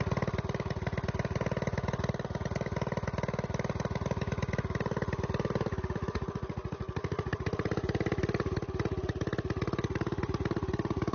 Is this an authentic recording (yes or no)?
yes